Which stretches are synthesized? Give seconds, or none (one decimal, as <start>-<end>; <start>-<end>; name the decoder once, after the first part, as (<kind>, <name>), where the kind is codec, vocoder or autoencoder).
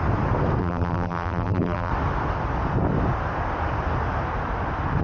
0.6-1.9 (vocoder, BigVGAN v2)